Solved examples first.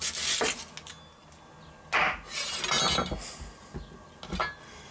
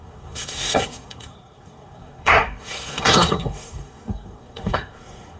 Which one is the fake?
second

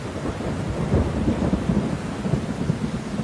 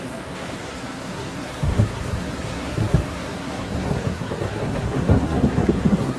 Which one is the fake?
second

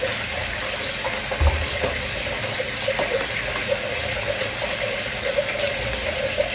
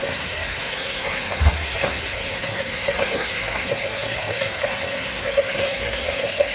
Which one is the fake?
second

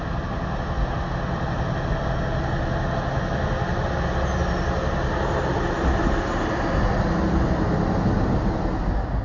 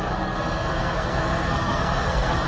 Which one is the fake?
second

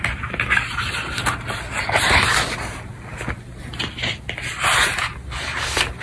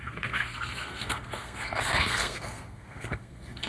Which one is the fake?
second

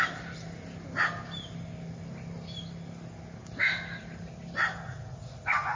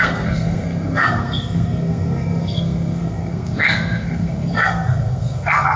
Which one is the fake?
second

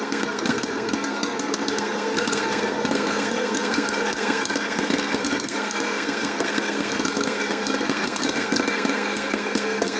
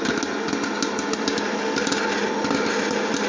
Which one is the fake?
first